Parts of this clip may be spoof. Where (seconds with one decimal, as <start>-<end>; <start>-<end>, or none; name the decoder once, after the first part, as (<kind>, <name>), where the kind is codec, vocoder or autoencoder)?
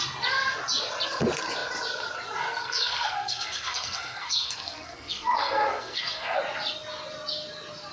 2.5-6.4 (codec, SNAC)